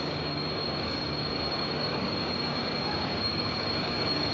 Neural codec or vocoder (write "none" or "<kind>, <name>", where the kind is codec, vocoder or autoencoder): codec, DAC